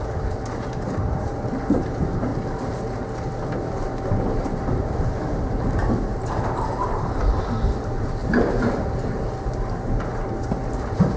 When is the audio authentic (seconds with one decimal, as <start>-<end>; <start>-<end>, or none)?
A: 2.3-4.4